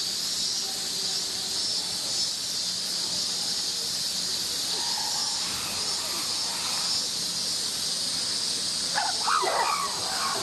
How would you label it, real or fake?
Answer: real